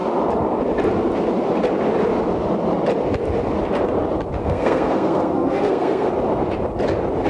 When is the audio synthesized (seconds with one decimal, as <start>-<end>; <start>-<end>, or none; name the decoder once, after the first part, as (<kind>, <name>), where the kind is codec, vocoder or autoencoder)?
4.4-6.1 (codec, SNAC)